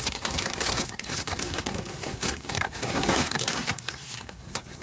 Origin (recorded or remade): remade